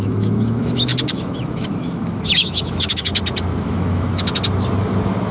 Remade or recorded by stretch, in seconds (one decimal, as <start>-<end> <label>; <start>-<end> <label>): 0.0-3.1 remade; 3.1-3.6 recorded; 3.6-4.1 remade; 4.1-5.3 recorded